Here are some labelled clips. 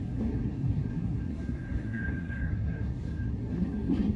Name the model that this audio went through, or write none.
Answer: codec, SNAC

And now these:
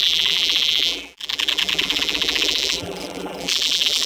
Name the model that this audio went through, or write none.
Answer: vocoder, BigVGAN v2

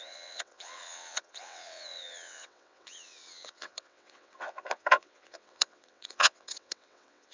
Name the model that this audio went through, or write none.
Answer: vocoder, WaveNeXt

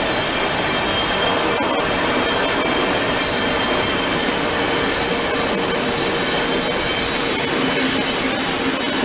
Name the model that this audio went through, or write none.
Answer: none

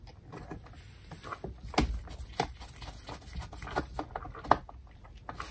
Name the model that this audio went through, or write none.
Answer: none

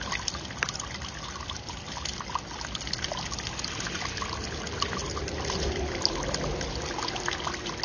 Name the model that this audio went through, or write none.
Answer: none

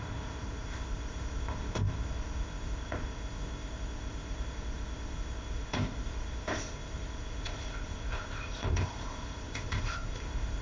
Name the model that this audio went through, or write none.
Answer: codec, ZipCodec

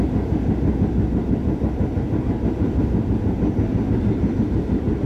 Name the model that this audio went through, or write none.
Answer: none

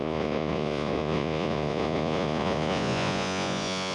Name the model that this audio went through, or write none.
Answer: vocoder, Vocos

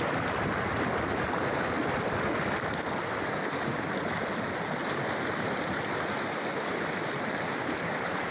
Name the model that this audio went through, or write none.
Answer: none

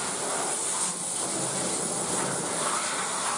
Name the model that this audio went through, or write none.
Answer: none